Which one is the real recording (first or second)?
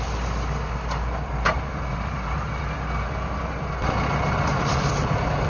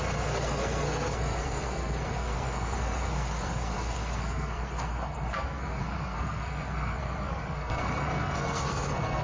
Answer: first